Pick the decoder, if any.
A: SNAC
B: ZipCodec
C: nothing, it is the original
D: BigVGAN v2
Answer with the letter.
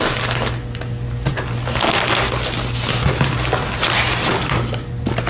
C